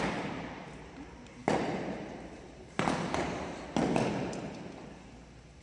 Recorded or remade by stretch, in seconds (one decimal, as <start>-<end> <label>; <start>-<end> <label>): 0.0-5.6 remade